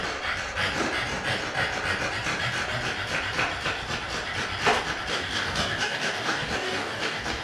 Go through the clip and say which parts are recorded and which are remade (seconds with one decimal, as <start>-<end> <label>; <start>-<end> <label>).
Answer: 0.0-5.1 recorded; 5.1-7.4 remade